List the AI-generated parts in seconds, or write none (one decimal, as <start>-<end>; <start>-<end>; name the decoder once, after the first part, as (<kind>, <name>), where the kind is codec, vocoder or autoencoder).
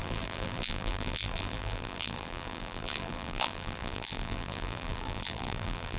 0.0-6.0 (vocoder, BigVGAN v2)